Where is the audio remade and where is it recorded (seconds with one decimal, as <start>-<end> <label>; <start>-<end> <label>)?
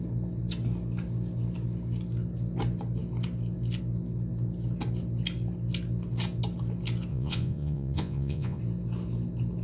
0.0-7.1 recorded; 7.1-8.6 remade; 8.6-9.6 recorded